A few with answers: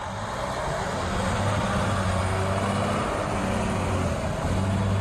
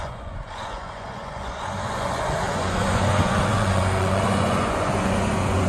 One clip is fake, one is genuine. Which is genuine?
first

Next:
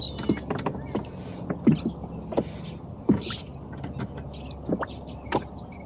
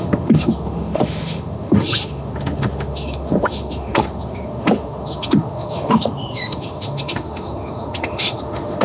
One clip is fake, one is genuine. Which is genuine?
first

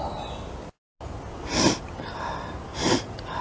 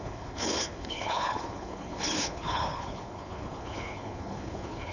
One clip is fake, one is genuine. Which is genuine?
first